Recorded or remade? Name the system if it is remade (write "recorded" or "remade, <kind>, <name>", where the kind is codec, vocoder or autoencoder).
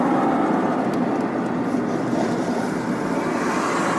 recorded